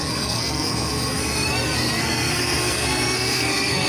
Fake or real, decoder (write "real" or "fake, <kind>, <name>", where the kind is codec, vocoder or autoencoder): fake, codec, SNAC